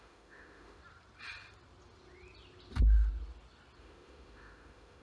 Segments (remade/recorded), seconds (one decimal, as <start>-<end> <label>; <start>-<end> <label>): 0.0-0.8 remade; 0.8-3.8 recorded; 3.8-5.0 remade